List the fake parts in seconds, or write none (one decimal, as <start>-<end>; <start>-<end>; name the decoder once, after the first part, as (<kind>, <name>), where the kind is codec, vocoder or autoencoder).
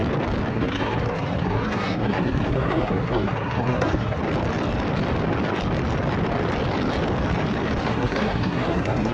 0.5-4.2 (codec, SNAC); 7.8-9.1